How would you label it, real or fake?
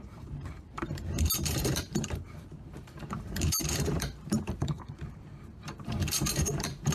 fake